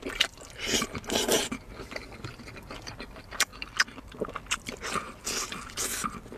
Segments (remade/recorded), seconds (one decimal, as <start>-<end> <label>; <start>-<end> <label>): 0.0-6.4 recorded